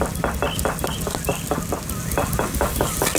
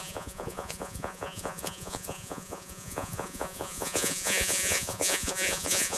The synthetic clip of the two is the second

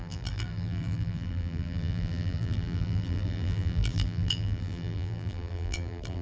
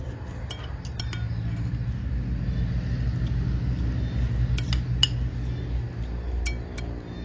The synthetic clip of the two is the first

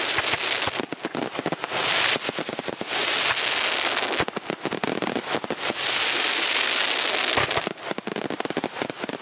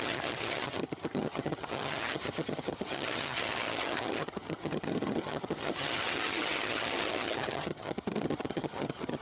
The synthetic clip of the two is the second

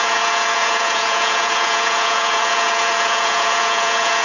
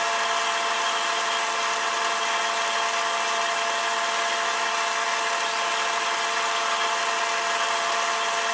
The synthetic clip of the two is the first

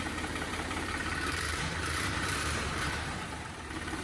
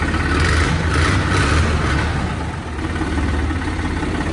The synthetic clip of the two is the first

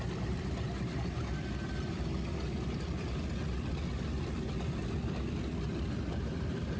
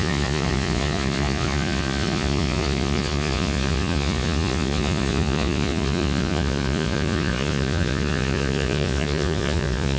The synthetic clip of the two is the second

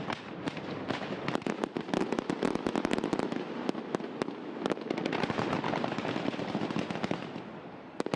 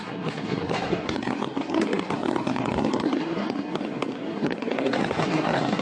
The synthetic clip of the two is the second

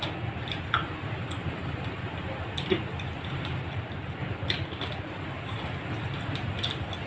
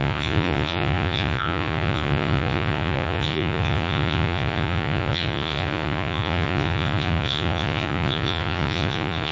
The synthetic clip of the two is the second